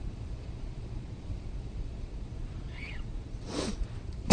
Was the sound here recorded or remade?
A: remade